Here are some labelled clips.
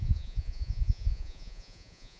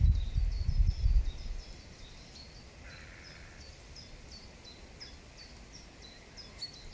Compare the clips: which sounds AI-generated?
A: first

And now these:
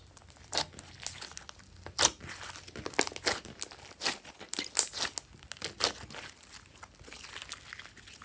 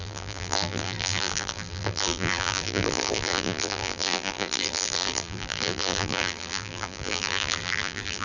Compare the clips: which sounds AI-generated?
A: second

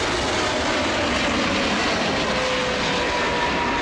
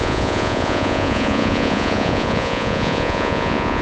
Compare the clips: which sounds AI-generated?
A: second